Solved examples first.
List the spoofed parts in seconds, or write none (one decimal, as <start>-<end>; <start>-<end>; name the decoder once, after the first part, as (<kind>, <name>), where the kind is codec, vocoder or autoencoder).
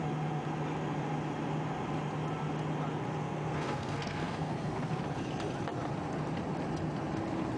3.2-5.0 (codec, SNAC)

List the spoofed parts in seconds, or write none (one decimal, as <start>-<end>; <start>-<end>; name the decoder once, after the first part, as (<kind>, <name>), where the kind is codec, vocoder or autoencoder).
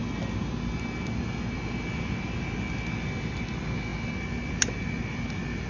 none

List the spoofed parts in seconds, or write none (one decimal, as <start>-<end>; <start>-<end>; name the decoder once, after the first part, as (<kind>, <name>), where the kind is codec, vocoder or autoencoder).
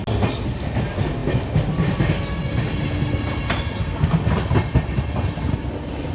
none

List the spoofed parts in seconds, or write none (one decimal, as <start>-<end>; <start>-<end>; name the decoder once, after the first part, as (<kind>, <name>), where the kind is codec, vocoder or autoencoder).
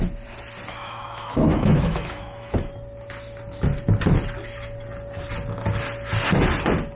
0.8-2.7 (autoencoder, DAC-VAE)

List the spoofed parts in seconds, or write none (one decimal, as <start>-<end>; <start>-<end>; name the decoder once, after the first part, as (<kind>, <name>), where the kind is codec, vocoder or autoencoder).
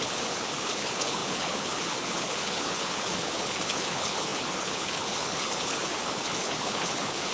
0.0-7.3 (codec, HILCodec)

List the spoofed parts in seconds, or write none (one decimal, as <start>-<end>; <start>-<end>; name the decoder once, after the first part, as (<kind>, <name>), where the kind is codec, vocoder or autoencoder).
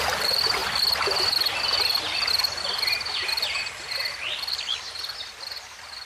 none